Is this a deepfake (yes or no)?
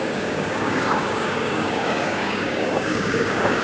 yes